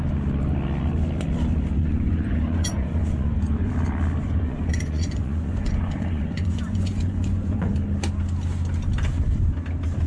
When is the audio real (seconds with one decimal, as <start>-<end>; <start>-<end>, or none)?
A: 0.0-1.8; 3.7-4.2; 7.7-10.1